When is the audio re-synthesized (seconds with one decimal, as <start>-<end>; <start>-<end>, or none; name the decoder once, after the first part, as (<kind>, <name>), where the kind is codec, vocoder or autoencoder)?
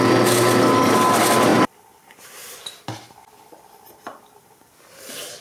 1.5-4.5 (vocoder, BigVGAN v2)